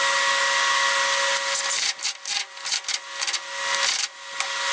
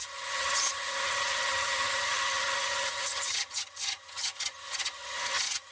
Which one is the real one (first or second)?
first